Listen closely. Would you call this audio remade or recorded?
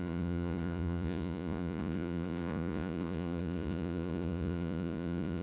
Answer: remade